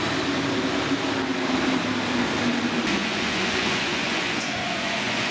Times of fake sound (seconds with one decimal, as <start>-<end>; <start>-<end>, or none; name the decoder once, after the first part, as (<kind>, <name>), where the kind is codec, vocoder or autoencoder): 3.0-5.3 (vocoder, Vocos)